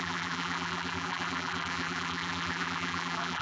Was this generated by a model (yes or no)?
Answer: yes